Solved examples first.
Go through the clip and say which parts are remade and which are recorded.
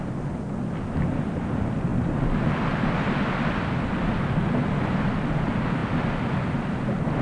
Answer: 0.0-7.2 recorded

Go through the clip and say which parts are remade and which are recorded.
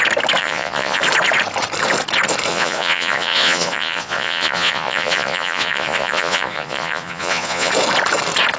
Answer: 0.0-0.4 recorded; 0.4-1.0 remade; 1.0-2.5 recorded; 2.5-7.7 remade; 7.7-8.6 recorded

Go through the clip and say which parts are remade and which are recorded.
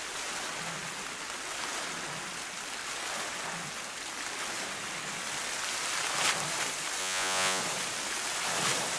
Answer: 0.0-7.0 recorded; 7.0-7.6 remade; 7.6-9.0 recorded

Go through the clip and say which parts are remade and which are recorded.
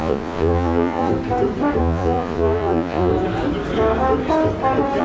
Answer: 0.0-1.1 remade; 1.1-1.8 recorded; 1.8-3.1 remade; 3.1-5.0 recorded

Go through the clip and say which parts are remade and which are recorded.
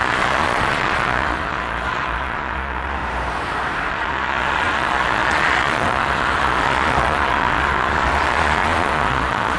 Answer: 0.0-3.0 remade; 3.0-3.9 recorded; 3.9-9.6 remade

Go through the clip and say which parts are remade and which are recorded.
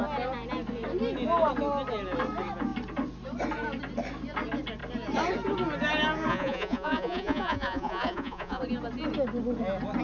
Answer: 0.0-6.3 recorded; 6.3-8.6 remade; 8.6-10.0 recorded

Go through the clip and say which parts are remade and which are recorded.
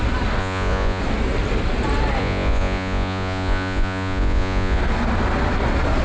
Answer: 0.0-0.4 recorded; 0.4-1.0 remade; 1.0-2.2 recorded; 2.2-4.8 remade; 4.8-6.0 recorded